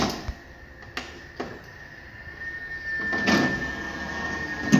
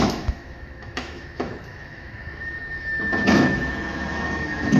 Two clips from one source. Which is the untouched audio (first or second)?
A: first